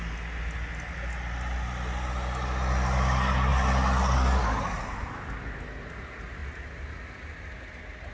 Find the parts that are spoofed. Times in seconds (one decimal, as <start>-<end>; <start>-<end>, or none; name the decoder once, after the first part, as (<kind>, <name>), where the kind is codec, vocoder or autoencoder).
none